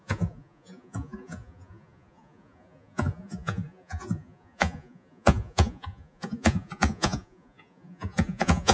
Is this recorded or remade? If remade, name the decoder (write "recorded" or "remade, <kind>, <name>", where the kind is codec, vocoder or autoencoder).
remade, vocoder, Vocos